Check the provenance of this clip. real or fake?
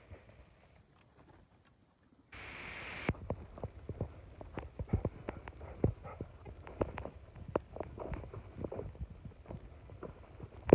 real